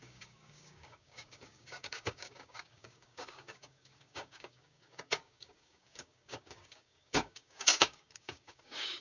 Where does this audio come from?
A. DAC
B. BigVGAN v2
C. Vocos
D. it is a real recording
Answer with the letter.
A